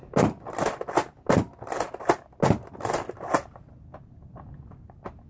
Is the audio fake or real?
real